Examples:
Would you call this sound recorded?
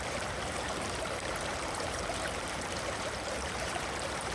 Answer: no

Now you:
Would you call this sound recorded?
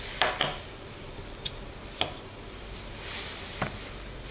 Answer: yes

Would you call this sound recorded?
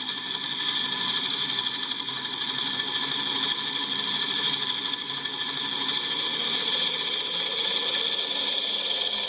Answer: yes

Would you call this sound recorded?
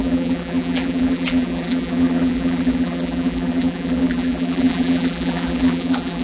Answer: no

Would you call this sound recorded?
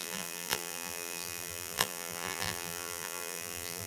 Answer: no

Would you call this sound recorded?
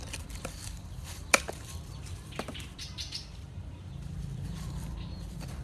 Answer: no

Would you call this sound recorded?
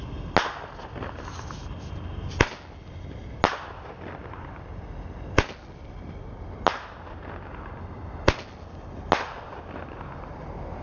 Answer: yes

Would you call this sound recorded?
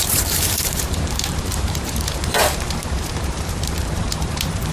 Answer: no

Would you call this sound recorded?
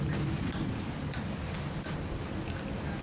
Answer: yes